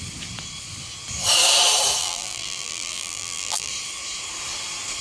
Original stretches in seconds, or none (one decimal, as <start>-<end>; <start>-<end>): 0.0-2.0; 3.7-5.0